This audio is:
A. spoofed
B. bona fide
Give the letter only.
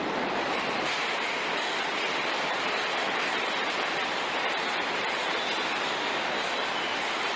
A